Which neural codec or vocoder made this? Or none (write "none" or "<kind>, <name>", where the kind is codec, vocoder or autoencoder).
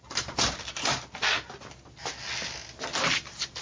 none